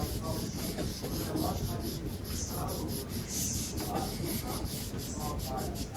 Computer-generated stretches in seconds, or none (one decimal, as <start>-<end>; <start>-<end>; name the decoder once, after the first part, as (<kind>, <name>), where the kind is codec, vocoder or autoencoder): 0.9-1.5 (codec, DAC)